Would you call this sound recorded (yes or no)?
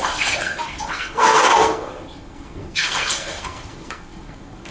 no